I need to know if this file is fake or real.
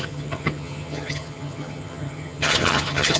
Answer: fake